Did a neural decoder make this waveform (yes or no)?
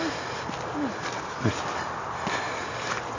no